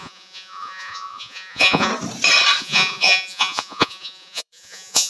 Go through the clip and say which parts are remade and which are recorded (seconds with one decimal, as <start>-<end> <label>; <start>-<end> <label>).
0.0-1.9 remade; 1.9-2.6 recorded; 2.6-5.1 remade